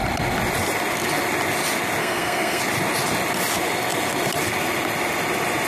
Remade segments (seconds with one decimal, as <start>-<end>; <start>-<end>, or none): 2.0-2.6